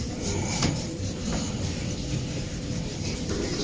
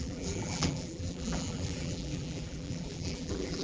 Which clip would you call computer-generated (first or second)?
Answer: second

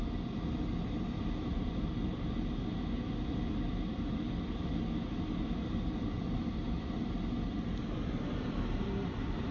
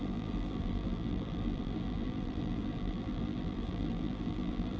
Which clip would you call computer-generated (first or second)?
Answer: second